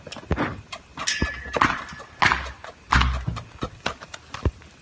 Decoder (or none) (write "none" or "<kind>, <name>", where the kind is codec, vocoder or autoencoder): none